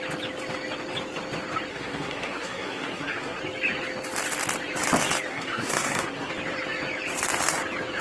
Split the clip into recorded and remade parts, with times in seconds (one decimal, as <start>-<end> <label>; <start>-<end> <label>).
0.0-1.7 recorded; 1.7-3.4 remade; 3.4-5.3 recorded; 5.3-6.3 remade; 6.3-8.0 recorded